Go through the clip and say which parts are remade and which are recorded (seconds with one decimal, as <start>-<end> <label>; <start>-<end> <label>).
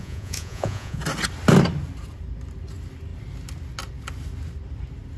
0.0-1.0 remade; 1.0-5.2 recorded